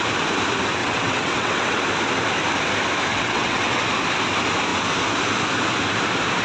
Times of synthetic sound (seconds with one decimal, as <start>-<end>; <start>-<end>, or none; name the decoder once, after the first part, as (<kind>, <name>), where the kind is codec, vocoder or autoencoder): 0.8-1.8 (vocoder, WaveNeXt); 3.1-3.8